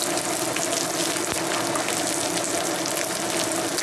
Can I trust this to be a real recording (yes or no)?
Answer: yes